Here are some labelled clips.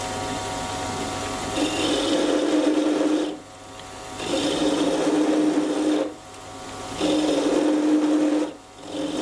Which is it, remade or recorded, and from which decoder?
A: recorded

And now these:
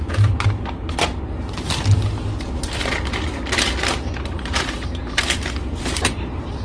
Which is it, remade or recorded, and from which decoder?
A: recorded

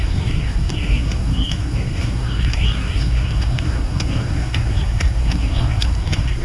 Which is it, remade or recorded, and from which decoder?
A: remade, codec, SNAC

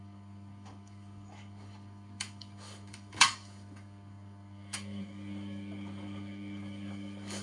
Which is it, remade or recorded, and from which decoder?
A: remade, codec, DAC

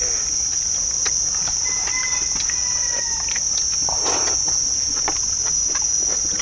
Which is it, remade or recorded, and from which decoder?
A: recorded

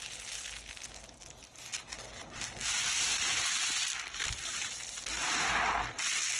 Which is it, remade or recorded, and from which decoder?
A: recorded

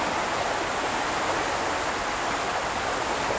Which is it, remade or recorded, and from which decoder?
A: recorded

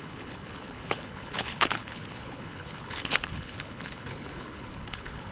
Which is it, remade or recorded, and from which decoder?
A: remade, codec, HILCodec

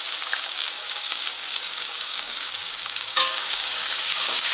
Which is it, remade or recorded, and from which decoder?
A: remade, codec, DAC